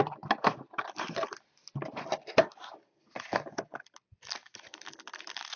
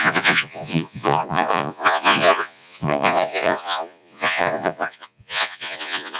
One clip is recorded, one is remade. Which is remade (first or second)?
second